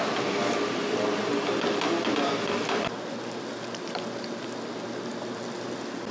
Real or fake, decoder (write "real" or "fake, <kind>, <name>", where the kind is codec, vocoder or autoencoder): real